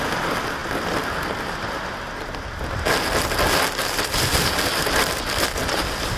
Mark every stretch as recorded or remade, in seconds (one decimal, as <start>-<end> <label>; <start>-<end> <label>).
0.0-6.2 recorded